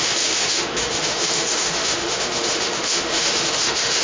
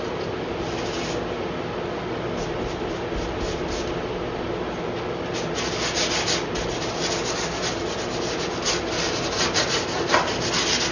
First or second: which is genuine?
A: second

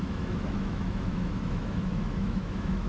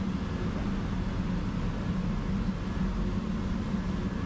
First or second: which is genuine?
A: second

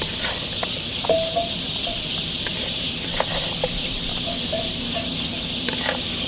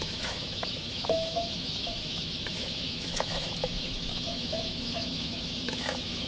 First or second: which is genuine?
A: first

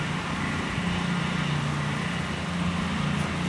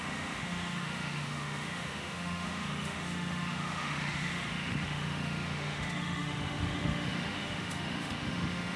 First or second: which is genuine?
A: first